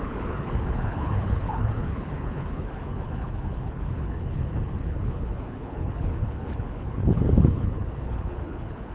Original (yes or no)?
no